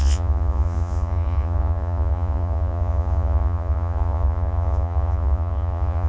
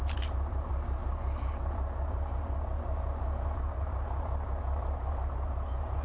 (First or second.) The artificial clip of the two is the first